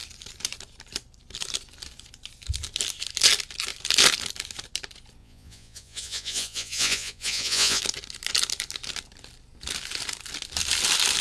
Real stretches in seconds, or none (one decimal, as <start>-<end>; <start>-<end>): 0.0-5.2; 7.8-11.2